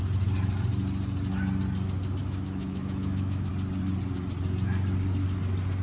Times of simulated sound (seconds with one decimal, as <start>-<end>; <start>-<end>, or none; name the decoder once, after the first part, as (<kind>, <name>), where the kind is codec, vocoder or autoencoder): 2.2-3.5 (autoencoder, DAC-VAE)